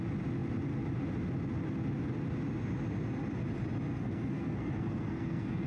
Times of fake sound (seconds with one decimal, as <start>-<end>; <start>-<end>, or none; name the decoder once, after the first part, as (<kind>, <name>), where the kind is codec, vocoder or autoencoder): 3.9-5.7 (codec, SNAC)